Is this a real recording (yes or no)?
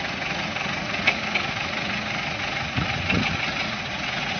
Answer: no